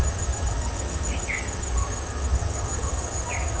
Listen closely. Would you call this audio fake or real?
fake